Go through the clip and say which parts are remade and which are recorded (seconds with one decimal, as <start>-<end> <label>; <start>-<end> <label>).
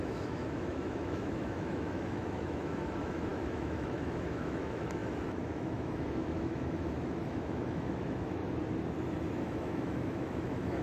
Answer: 0.0-8.4 remade; 8.4-9.3 recorded; 9.3-10.8 remade